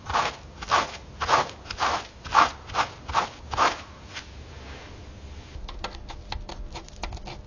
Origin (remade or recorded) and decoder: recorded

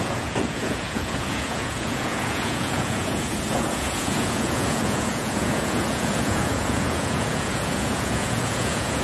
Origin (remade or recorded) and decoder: remade, vocoder, Vocos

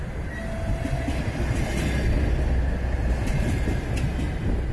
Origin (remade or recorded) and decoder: recorded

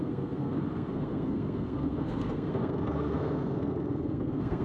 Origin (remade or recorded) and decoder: remade, codec, SNAC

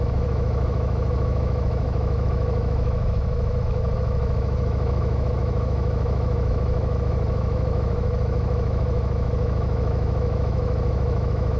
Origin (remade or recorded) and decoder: remade, autoencoder, DAC-VAE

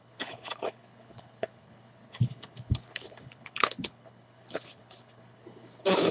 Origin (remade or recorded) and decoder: remade, codec, HILCodec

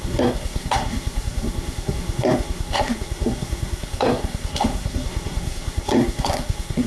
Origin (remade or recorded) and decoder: remade, codec, SNAC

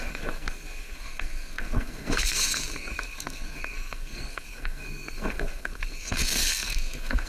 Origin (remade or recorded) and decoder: remade, codec, SNAC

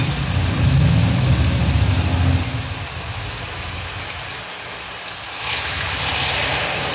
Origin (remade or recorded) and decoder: recorded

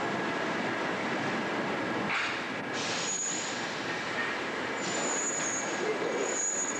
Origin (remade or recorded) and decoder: recorded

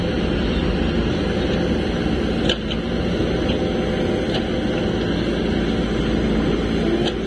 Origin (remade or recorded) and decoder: recorded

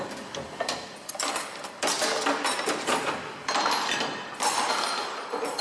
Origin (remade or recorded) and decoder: remade, vocoder, BigVGAN v2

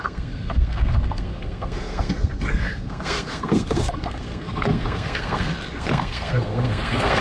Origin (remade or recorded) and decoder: remade, codec, SNAC